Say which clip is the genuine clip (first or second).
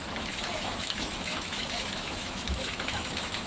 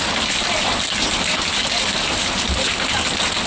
second